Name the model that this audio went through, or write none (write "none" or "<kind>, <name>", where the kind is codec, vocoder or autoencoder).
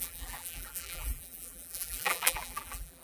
vocoder, BigVGAN v2